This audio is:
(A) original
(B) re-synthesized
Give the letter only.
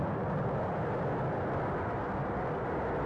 A